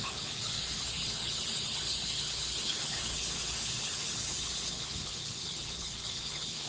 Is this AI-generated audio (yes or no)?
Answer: yes